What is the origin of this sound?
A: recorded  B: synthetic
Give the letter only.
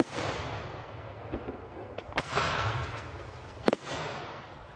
B